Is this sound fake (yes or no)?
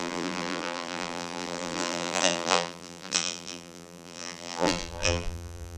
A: yes